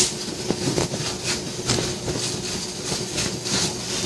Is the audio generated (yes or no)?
no